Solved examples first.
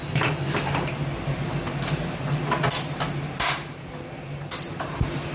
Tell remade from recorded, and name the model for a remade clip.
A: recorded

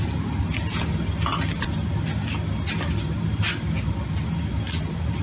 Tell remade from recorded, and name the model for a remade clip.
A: recorded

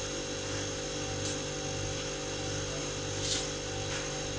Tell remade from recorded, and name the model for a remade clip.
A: recorded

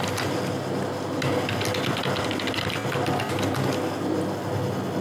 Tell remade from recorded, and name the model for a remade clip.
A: recorded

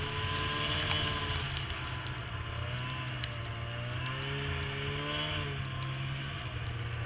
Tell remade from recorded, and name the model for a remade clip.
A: recorded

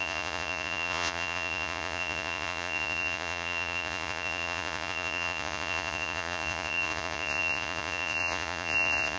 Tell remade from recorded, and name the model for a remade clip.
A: remade, vocoder, Vocos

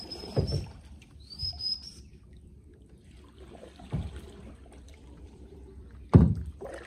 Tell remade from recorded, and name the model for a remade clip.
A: remade, vocoder, BigVGAN v2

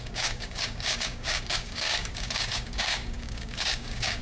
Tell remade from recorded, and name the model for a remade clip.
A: remade, codec, DAC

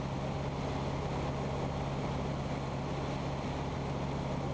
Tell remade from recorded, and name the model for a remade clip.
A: recorded